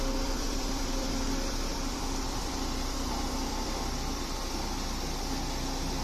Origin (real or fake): fake